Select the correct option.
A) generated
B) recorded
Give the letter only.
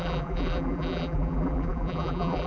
A